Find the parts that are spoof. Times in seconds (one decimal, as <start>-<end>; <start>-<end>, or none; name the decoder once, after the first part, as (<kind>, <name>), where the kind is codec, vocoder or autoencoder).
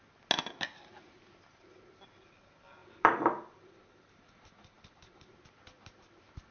2.8-5.3 (vocoder, BigVGAN v2)